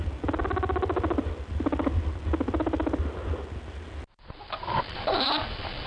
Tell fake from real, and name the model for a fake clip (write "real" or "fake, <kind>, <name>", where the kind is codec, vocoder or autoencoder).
real